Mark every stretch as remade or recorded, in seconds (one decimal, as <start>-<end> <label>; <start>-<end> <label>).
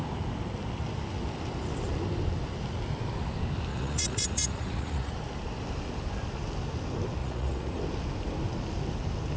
0.0-3.7 recorded; 3.7-5.1 remade; 5.1-7.2 recorded; 7.2-7.8 remade; 7.8-9.4 recorded